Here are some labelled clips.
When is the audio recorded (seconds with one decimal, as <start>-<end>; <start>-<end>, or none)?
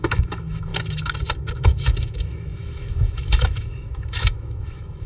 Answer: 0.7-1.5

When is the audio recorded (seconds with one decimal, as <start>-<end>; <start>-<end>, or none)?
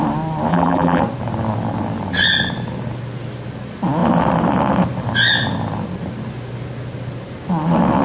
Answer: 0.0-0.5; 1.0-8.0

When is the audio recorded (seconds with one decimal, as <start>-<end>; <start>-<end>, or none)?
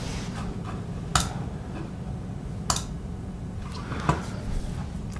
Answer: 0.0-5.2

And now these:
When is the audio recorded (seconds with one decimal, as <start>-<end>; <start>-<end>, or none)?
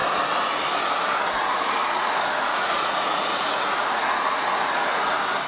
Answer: 0.0-1.8; 5.1-5.5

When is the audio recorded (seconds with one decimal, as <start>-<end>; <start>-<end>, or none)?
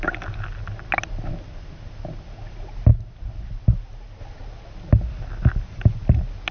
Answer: 0.0-6.5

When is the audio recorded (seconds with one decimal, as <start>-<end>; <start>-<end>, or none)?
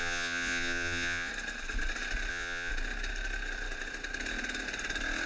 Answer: 1.3-2.3; 2.7-5.3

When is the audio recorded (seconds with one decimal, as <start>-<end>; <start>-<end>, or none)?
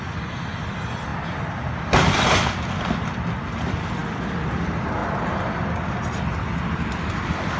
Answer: 0.0-4.0; 4.6-7.6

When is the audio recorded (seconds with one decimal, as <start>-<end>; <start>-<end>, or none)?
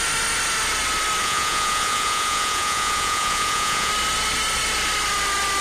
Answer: 0.0-1.2; 3.9-5.6